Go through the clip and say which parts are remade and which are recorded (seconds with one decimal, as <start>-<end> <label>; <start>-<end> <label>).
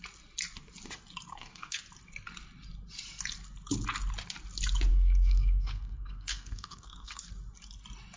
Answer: 0.0-1.3 recorded; 1.3-1.8 remade; 1.8-4.9 recorded; 4.9-7.2 remade; 7.2-8.2 recorded